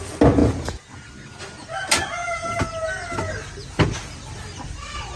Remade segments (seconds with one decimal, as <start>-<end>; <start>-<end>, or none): 0.4-1.1; 2.2-2.7